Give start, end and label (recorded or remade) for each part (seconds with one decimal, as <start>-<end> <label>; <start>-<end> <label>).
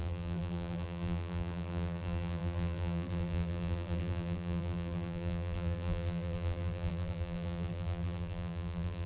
0.0-9.1 remade